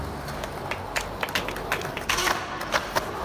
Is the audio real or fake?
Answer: real